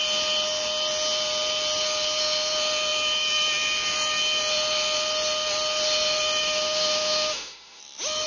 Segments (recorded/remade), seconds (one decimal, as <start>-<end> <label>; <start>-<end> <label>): 0.0-6.4 recorded; 6.4-7.8 remade; 7.8-8.3 recorded